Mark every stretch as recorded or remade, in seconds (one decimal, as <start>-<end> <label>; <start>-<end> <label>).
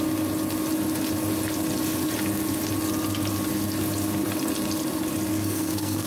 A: 0.0-5.3 recorded; 5.3-6.1 remade